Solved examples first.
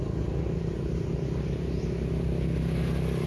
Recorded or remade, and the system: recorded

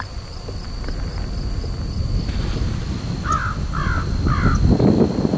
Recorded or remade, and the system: recorded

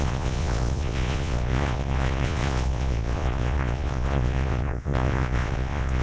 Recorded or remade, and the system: remade, vocoder, Vocos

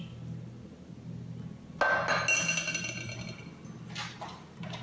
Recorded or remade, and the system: recorded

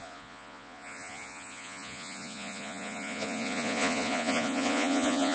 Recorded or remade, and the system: remade, vocoder, Vocos